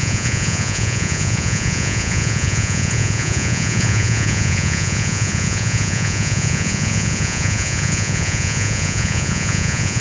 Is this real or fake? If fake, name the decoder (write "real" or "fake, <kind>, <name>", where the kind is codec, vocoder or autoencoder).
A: fake, vocoder, Vocos